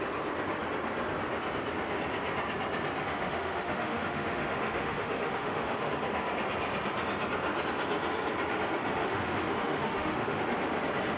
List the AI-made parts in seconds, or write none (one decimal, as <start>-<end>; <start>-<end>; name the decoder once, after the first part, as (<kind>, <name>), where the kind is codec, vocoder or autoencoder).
3.1-5.9 (autoencoder, DAC-VAE); 9.0-10.4